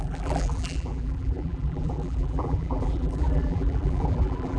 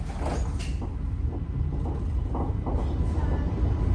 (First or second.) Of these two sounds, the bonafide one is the second